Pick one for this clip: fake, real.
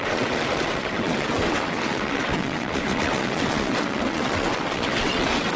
fake